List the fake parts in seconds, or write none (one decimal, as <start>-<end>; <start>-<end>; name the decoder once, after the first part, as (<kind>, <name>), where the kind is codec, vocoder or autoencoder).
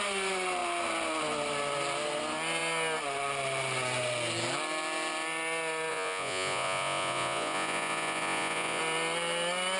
5.9-8.8 (vocoder, Vocos)